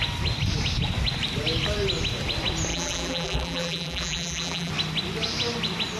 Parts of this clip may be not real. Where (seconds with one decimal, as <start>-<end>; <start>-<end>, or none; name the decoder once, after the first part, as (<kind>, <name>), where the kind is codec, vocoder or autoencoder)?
2.7-4.7 (vocoder, BigVGAN v2)